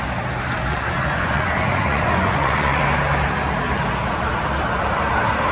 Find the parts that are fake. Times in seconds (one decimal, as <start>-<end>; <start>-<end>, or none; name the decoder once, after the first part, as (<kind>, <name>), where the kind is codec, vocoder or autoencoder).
0.7-2.8 (vocoder, Vocos)